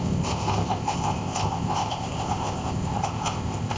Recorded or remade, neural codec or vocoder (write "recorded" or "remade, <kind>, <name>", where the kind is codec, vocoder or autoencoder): remade, codec, ZipCodec